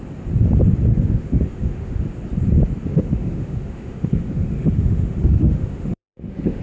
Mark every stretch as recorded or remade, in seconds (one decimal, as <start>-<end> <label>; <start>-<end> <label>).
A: 0.0-0.9 recorded; 0.9-2.0 remade; 2.0-2.9 recorded; 2.9-6.6 remade